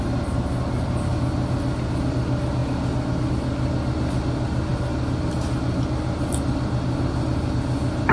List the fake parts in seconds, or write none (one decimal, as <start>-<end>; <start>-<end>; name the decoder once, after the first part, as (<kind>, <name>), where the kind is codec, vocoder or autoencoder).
none